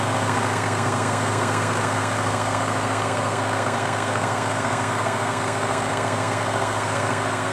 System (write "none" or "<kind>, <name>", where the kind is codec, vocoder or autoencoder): codec, SNAC